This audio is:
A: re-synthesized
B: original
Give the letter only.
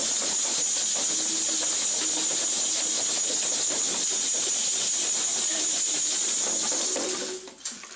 B